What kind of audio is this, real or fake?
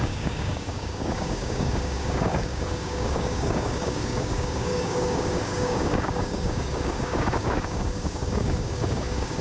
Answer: fake